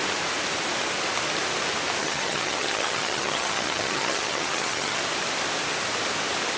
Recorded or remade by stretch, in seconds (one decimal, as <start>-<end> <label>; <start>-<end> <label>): 0.0-2.0 recorded; 2.0-5.0 remade; 5.0-6.6 recorded